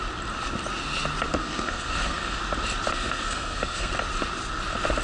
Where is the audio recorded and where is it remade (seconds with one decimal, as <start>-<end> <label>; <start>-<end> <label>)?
0.0-1.4 recorded; 1.4-2.4 remade; 2.4-2.9 recorded; 2.9-3.9 remade; 3.9-5.0 recorded